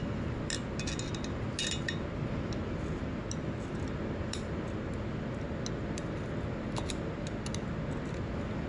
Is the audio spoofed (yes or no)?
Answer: no